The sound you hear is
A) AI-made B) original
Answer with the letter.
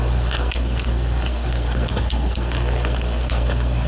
A